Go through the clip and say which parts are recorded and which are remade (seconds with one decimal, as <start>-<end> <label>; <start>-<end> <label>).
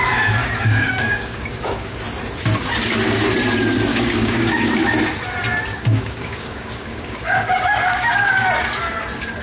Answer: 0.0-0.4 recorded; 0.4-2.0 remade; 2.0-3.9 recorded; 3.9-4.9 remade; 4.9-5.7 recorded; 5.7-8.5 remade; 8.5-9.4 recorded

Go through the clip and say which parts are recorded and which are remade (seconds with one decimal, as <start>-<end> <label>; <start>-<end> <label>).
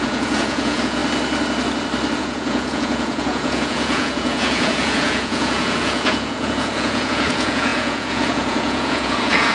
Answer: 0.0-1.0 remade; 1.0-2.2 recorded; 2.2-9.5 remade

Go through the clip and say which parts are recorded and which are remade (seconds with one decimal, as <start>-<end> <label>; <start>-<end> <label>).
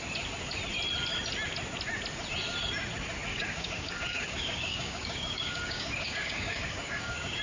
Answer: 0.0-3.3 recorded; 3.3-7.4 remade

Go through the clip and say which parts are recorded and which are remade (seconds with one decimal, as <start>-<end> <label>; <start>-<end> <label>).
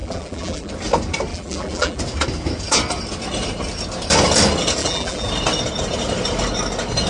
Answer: 0.0-0.7 remade; 0.7-1.3 recorded; 1.3-2.0 remade; 2.0-4.8 recorded; 4.8-5.3 remade; 5.3-7.1 recorded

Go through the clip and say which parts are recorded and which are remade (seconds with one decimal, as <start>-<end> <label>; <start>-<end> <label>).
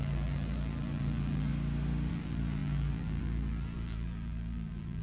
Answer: 0.0-1.5 remade; 1.5-2.1 recorded; 2.1-5.0 remade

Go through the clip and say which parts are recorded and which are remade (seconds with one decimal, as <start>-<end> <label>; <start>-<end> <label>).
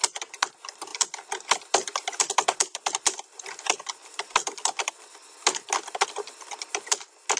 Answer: 0.0-0.9 recorded; 0.9-5.3 remade; 5.3-7.4 recorded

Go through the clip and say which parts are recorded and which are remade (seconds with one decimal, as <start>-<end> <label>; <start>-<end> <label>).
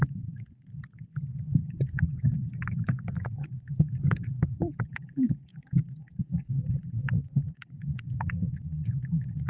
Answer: 0.0-0.7 remade; 0.7-1.8 recorded; 1.8-9.5 remade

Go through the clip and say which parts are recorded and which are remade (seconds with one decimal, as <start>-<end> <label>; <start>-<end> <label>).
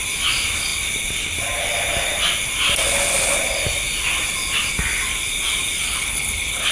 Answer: 0.0-5.9 recorded; 5.9-6.7 remade